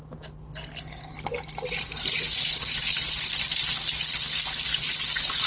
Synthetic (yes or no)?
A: no